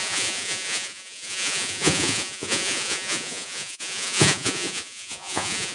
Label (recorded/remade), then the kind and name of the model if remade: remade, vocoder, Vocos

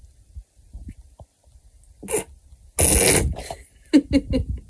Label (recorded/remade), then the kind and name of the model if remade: recorded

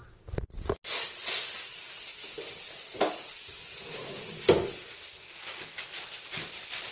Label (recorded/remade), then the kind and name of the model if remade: recorded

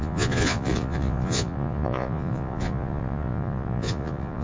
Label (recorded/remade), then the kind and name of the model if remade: remade, vocoder, Vocos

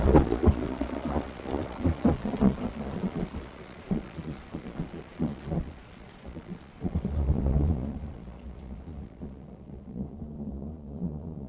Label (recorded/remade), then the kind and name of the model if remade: remade, vocoder, Vocos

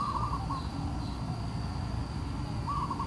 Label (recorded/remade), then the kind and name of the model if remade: recorded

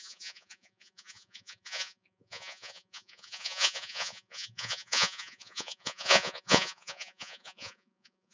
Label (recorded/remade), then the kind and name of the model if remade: remade, vocoder, Vocos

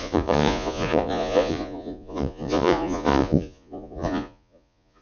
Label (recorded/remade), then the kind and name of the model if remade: remade, vocoder, Vocos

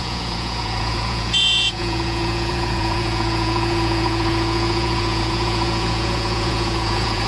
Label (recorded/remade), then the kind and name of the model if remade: remade, vocoder, Vocos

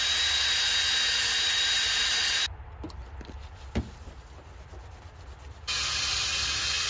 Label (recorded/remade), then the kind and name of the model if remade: recorded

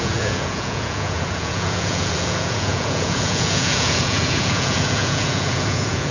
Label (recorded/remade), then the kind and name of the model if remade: remade, vocoder, Vocos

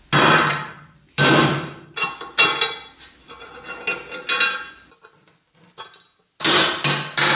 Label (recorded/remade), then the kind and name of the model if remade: recorded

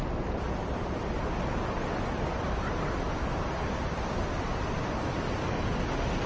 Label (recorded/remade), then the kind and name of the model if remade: recorded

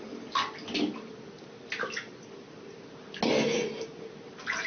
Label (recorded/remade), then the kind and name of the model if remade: recorded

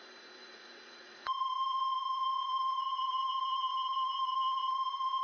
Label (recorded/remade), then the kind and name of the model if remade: remade, vocoder, Vocos